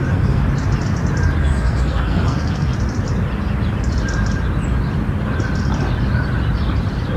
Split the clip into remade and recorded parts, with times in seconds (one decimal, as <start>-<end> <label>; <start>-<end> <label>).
0.0-0.4 remade; 0.4-1.4 recorded; 1.4-2.7 remade; 2.7-7.2 recorded